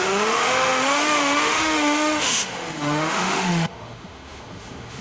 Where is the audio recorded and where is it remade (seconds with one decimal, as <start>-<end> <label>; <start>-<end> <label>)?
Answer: 0.0-5.0 remade